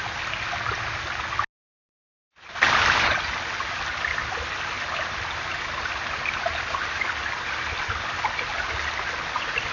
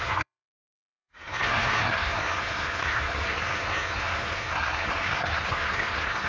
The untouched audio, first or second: first